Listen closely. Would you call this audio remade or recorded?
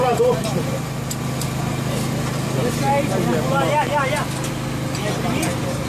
recorded